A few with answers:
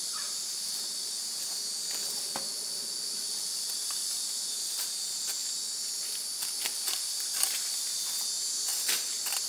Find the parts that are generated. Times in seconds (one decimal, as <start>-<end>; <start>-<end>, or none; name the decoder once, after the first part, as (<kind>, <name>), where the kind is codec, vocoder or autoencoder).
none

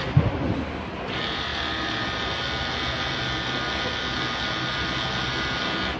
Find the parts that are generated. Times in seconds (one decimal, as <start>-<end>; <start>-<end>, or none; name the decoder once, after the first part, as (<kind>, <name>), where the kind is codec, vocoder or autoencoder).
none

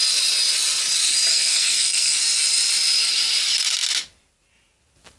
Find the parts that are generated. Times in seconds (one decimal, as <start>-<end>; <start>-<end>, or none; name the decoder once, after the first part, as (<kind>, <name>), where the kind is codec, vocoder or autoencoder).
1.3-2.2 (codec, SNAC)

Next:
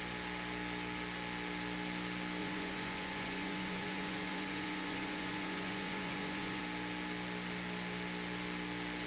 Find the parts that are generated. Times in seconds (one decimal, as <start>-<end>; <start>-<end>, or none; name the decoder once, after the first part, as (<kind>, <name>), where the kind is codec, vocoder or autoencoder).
2.4-6.6 (vocoder, Vocos)